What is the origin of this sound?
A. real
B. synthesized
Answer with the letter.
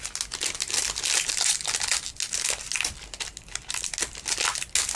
A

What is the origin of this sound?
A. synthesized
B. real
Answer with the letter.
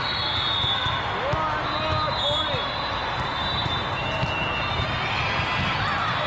B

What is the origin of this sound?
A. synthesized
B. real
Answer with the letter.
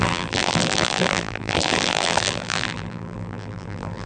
A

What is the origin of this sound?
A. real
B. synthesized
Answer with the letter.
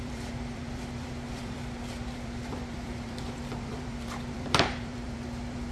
B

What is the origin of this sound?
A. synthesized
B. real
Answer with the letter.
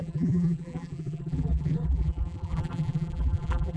A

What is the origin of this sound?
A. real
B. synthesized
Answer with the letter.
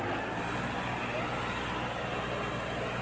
A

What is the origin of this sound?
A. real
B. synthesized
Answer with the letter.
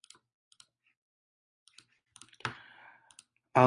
B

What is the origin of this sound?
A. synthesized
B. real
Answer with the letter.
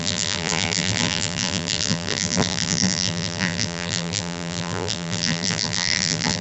A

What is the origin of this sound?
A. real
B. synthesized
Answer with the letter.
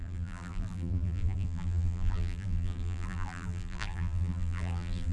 B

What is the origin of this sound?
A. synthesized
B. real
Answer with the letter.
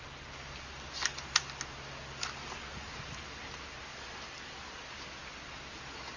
B